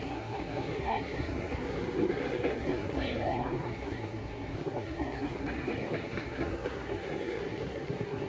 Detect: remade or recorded remade